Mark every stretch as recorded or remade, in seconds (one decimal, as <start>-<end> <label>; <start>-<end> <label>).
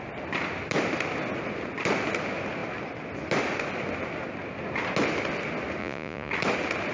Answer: 0.0-5.8 recorded; 5.8-6.3 remade; 6.3-6.9 recorded